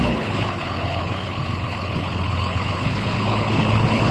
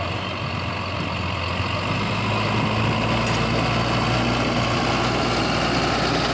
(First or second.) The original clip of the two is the second